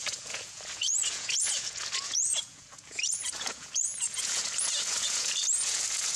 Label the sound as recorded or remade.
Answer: remade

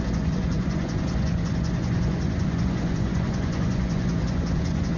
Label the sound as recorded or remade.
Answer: remade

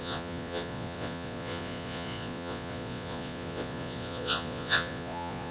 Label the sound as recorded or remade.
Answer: remade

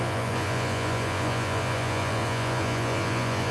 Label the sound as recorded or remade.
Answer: remade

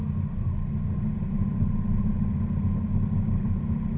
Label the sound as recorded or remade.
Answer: recorded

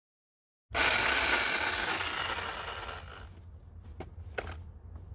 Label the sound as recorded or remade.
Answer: recorded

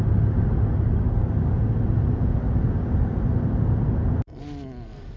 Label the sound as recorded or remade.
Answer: recorded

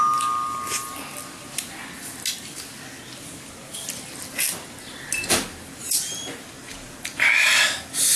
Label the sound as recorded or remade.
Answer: recorded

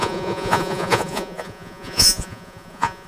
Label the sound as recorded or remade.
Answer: remade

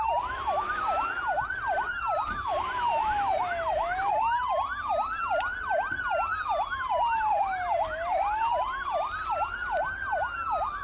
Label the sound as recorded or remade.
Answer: recorded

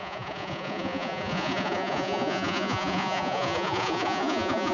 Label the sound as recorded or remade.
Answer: remade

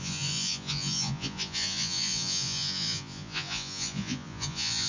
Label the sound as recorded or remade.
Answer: remade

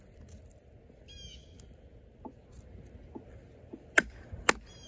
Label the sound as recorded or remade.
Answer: recorded